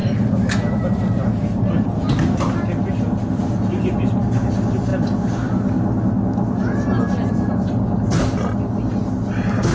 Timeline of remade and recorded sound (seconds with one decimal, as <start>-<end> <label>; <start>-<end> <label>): 0.0-9.7 recorded